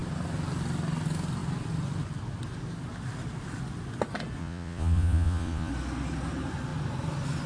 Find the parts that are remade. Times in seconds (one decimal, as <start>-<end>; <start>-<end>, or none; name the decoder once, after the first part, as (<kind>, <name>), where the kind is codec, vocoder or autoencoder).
4.4-5.7 (vocoder, Vocos)